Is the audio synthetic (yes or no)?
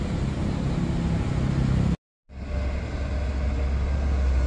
no